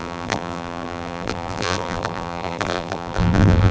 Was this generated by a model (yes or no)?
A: yes